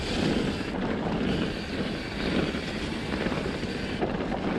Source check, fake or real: real